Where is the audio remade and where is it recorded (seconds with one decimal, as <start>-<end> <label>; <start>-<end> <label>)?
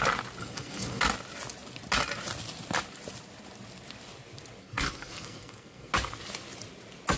0.0-0.4 recorded; 0.4-1.0 remade; 1.0-4.6 recorded; 4.6-5.9 remade; 5.9-7.2 recorded